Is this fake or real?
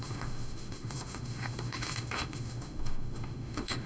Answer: fake